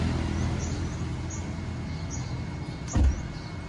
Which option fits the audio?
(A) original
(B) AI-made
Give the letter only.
A